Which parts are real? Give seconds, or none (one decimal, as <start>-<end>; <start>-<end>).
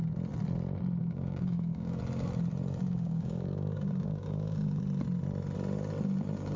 0.0-1.0; 2.0-2.8; 4.8-6.6